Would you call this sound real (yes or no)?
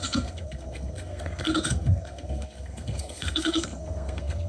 no